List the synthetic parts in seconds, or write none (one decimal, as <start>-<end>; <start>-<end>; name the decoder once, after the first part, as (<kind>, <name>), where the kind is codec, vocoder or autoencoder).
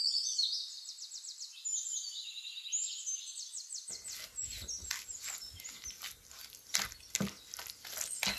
none